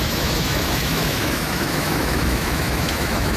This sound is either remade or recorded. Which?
remade